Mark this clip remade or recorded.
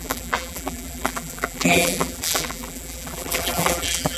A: remade